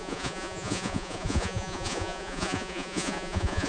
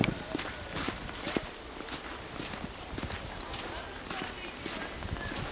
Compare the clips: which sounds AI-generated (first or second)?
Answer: first